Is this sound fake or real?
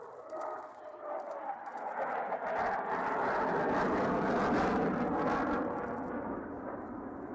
real